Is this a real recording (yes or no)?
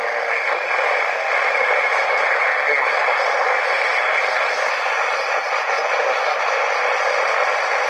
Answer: yes